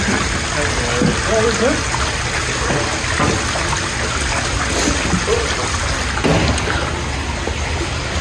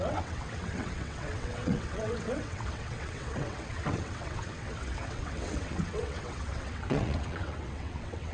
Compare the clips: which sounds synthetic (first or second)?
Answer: second